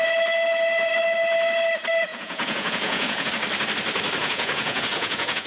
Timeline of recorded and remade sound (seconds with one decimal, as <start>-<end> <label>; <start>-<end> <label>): 0.0-2.1 recorded; 2.1-3.3 remade; 3.3-4.2 recorded; 4.2-5.5 remade